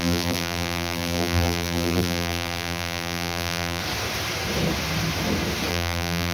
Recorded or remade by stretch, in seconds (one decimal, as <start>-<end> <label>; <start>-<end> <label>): 0.0-3.8 remade; 3.8-5.7 recorded; 5.7-6.3 remade